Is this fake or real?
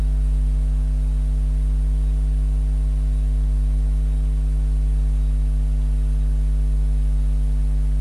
real